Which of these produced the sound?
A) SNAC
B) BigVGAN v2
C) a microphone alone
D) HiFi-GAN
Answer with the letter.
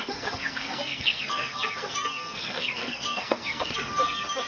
A